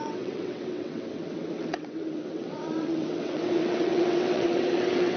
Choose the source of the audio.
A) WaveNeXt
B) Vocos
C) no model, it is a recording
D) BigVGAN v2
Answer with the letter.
A